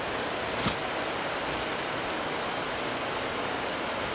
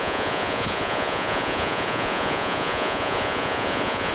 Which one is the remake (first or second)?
second